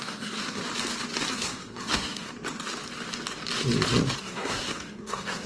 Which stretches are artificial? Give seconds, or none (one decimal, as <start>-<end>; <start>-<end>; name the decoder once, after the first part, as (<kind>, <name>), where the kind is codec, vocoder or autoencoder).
0.0-0.6 (codec, SNAC); 1.3-2.3; 4.2-5.5